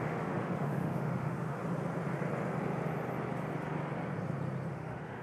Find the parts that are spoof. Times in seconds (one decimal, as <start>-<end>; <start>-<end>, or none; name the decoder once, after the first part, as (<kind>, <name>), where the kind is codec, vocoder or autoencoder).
0.0-1.6 (autoencoder, DAC-VAE); 4.7-5.2